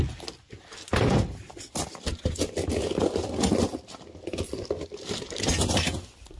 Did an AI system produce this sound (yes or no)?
no